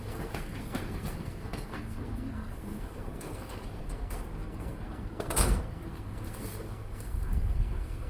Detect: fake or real fake